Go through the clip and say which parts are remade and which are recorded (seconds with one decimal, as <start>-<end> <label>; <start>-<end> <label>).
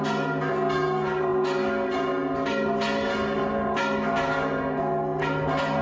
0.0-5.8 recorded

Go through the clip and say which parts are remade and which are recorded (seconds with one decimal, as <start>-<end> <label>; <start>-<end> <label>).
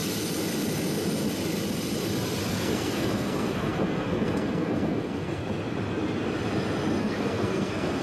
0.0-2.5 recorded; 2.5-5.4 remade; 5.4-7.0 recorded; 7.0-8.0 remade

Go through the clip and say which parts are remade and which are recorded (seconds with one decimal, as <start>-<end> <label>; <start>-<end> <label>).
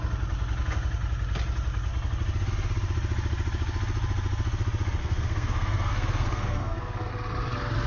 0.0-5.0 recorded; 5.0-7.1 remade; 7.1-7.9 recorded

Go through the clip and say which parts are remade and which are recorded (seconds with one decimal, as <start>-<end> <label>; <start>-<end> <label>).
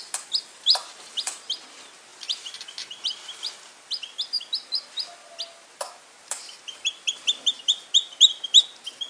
0.0-9.1 recorded